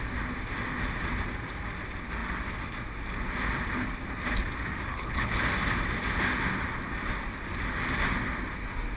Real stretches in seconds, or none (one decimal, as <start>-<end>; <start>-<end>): 0.0-4.9; 5.4-9.0